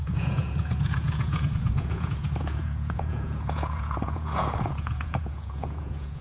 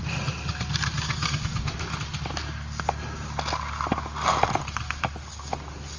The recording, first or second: second